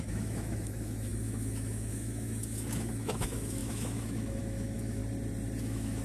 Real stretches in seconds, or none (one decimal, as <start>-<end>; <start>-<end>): 5.0-5.6